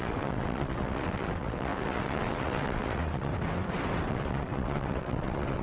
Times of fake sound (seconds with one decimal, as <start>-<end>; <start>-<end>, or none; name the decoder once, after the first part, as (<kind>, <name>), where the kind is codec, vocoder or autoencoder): 0.0-3.3 (vocoder, WaveNeXt); 4.1-5.6